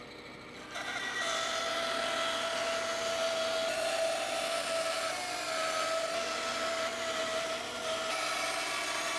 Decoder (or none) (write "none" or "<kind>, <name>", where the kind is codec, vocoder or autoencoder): none